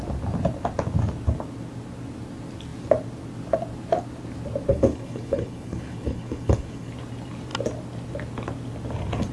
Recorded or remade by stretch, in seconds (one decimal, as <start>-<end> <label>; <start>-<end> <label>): 0.0-4.7 recorded; 4.7-6.9 remade; 6.9-9.3 recorded